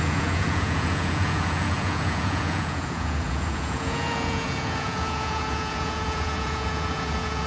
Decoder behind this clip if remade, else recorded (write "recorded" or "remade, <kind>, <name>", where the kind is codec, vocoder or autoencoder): remade, vocoder, Vocos